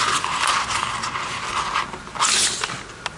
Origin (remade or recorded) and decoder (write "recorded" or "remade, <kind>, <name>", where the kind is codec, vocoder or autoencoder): recorded